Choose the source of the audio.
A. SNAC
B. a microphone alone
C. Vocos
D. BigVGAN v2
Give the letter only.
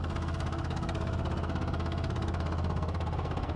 A